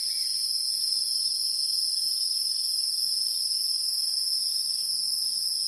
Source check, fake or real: real